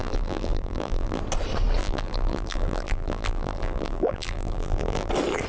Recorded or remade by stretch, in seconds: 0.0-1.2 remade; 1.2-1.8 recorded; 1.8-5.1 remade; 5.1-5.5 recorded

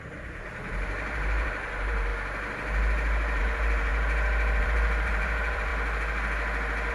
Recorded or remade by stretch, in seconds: 0.0-2.1 remade; 2.1-3.4 recorded; 3.4-3.9 remade; 3.9-4.6 recorded; 4.6-5.7 remade; 5.7-6.9 recorded

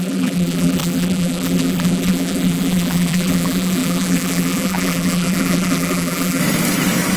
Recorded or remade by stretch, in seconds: 0.0-6.4 remade; 6.4-7.2 recorded

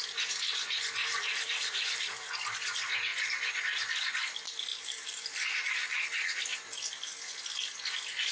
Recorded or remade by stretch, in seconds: 0.0-1.1 recorded; 1.1-2.3 remade; 2.3-4.7 recorded; 4.7-6.0 remade; 6.0-8.3 recorded